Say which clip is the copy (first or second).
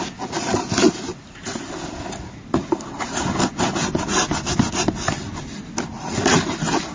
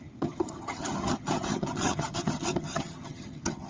second